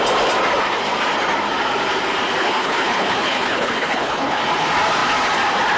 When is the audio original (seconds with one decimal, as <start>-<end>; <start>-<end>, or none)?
0.0-2.4; 4.4-5.8